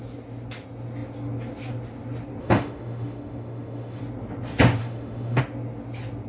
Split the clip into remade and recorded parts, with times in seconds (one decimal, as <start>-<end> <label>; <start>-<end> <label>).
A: 0.0-2.4 recorded; 2.4-4.0 remade; 4.0-4.8 recorded; 4.8-5.4 remade; 5.4-6.3 recorded